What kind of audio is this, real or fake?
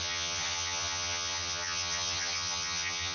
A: fake